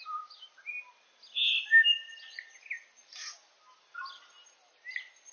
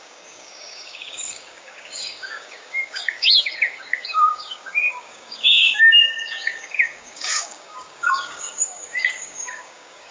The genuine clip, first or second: first